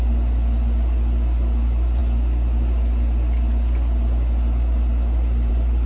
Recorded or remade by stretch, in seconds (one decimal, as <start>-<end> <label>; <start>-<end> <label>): 0.0-5.9 recorded